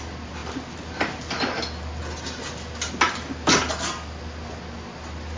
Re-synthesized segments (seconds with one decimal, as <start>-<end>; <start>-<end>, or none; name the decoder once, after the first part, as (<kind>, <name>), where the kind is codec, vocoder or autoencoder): none

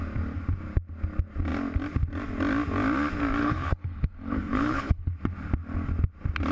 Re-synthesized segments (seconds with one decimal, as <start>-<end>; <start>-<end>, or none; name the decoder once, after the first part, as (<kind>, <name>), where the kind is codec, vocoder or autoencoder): 3.4-5.1 (codec, HILCodec)

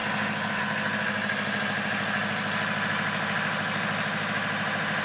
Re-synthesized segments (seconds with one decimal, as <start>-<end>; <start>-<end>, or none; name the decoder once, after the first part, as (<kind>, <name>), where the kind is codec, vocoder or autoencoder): none

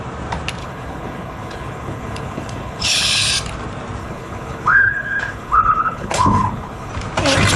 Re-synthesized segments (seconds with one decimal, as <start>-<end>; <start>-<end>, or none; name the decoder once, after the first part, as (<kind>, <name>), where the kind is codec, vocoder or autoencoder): 0.6-3.3 (codec, HILCodec); 4.0-6.9

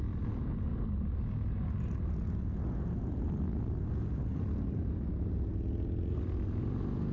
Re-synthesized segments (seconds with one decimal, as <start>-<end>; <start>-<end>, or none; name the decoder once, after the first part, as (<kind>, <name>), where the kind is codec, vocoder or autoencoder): none

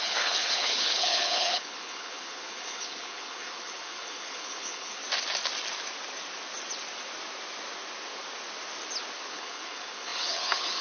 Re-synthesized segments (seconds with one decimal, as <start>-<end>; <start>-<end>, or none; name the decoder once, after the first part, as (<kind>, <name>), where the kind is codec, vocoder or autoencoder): 0.0-5.0 (codec, HILCodec); 9.3-10.8